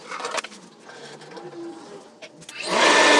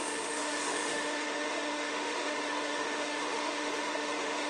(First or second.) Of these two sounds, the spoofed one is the second